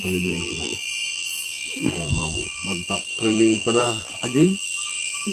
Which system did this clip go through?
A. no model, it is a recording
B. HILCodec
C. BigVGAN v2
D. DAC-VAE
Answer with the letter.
C